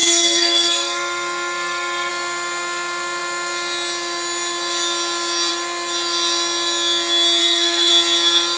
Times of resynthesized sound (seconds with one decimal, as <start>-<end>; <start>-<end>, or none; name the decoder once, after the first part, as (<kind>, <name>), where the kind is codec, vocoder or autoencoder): 0.0-2.1 (codec, SNAC); 7.4-7.9